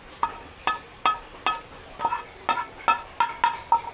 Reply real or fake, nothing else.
real